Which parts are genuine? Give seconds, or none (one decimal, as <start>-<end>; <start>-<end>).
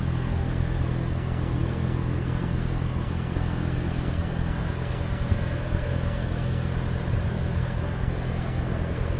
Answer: 6.7-7.3